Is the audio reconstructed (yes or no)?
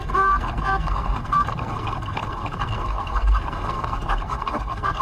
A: yes